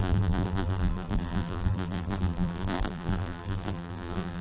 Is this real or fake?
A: fake